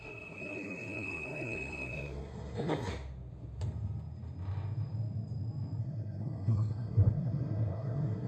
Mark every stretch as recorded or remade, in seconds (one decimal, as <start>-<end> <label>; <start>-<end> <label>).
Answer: 0.0-2.9 remade; 2.9-5.8 recorded; 5.8-8.3 remade